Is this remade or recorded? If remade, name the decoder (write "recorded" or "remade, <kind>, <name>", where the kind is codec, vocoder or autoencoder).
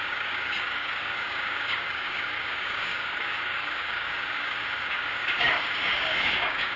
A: remade, codec, DAC